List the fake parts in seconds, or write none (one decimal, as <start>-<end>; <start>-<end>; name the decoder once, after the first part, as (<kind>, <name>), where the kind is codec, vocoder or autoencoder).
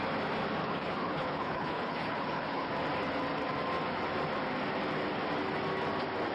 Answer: 0.6-2.7 (codec, HILCodec)